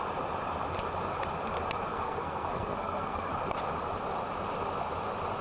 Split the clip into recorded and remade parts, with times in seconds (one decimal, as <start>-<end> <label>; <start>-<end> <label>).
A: 0.0-1.9 recorded; 1.9-3.3 remade; 3.3-5.4 recorded